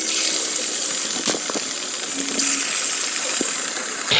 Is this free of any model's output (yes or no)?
yes